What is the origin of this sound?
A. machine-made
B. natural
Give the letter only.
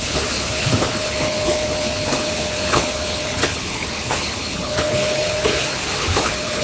A